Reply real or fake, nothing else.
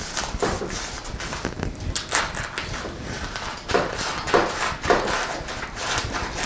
real